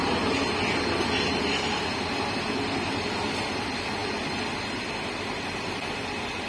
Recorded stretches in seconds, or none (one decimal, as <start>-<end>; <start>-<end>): 0.0-6.5